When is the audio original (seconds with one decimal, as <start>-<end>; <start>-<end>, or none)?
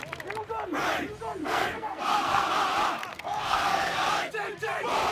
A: 0.0-1.4; 2.5-3.1; 4.3-5.1